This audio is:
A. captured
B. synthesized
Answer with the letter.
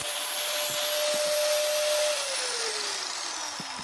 A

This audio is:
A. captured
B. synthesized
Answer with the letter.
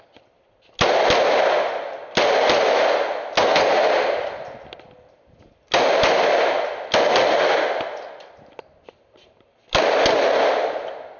A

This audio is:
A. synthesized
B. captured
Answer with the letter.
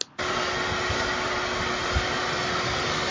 B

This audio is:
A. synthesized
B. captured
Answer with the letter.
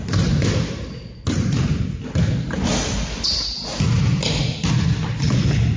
B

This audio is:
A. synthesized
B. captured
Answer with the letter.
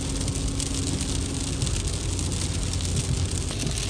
B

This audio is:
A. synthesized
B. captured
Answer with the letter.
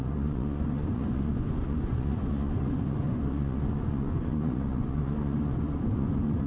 A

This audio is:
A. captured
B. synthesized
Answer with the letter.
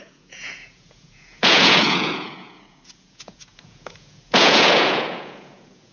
B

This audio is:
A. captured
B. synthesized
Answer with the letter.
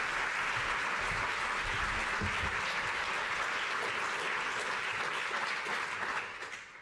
A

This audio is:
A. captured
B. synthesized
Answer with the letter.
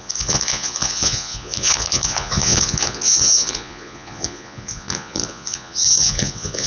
B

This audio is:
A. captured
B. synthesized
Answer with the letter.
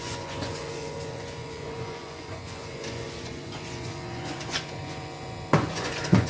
B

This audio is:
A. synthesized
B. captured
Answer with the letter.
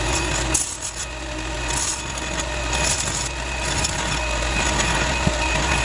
B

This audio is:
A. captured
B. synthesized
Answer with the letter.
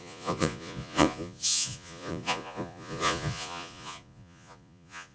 B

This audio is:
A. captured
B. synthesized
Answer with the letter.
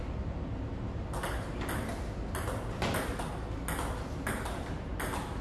A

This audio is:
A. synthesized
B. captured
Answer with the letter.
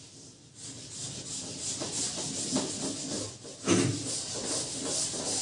B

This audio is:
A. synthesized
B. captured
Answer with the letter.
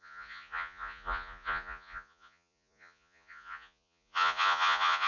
A